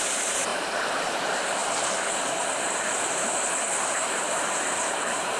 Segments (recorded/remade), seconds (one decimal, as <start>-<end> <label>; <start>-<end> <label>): 0.0-0.5 recorded; 0.5-1.2 remade; 1.2-3.8 recorded; 3.8-5.4 remade